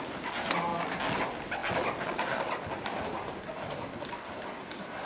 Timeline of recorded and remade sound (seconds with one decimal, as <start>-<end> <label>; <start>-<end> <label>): 0.0-5.0 recorded

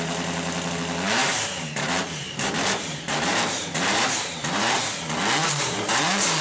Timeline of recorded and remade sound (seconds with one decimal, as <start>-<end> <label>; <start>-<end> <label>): 0.0-1.2 recorded; 1.2-5.0 remade; 5.0-5.4 recorded; 5.4-5.9 remade; 5.9-6.4 recorded

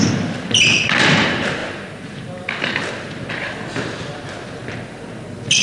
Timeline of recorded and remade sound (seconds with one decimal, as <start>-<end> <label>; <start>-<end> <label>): 0.0-5.6 remade